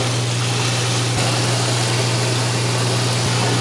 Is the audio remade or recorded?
recorded